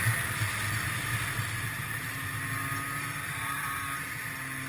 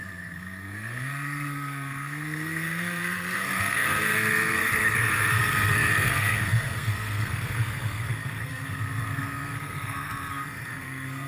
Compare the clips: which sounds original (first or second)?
first